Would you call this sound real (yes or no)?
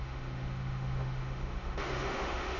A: no